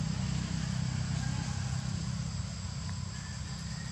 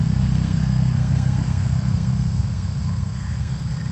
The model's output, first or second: second